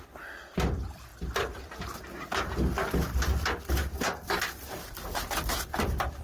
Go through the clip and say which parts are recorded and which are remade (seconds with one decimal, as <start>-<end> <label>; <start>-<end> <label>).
0.0-6.2 recorded